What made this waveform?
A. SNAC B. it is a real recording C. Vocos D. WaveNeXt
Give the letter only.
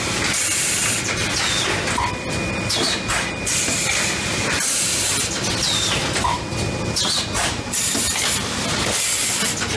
B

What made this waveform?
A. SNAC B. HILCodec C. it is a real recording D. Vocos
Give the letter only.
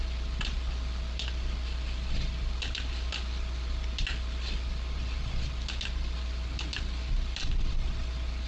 C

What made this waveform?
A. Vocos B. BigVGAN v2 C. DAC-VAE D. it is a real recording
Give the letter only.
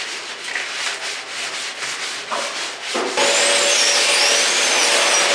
D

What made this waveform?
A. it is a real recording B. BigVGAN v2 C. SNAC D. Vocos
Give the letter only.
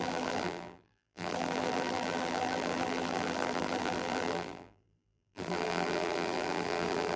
B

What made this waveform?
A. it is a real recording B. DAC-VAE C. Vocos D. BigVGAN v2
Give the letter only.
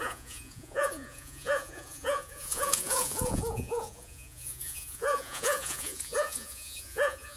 C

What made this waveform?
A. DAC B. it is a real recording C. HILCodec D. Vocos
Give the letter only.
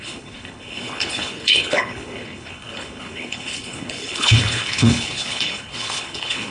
C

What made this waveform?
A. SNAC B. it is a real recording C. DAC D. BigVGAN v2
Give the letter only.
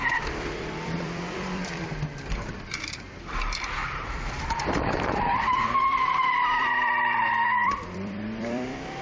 D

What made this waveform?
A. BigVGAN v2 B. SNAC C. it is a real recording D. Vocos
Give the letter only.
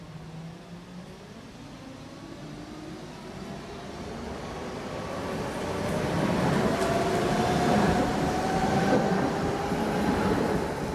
C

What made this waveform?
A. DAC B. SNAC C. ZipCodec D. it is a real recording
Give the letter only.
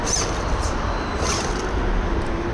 D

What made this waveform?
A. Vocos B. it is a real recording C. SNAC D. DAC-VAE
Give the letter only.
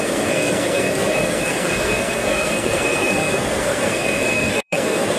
C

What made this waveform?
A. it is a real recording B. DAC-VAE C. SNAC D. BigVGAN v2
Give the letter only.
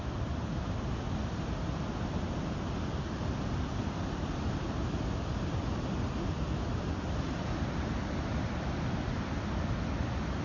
A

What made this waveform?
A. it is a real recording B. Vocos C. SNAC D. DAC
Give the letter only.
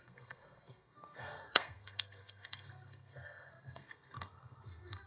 C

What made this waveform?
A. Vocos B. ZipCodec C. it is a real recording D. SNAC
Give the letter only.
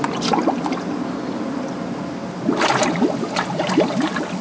C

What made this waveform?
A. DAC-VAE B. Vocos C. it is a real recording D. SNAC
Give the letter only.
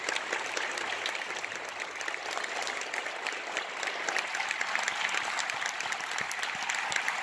C